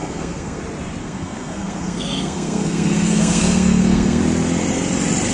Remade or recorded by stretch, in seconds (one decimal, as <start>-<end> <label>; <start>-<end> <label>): 0.0-0.6 remade; 0.6-1.0 recorded; 1.0-4.2 remade; 4.2-5.3 recorded